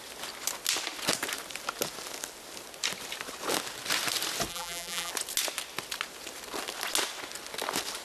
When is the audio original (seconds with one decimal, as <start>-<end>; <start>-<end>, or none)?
0.0-4.5; 5.1-8.0